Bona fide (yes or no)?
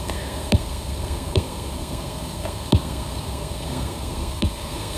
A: no